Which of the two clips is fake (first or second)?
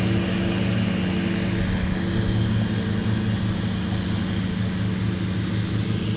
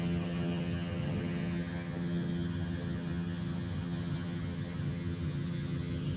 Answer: second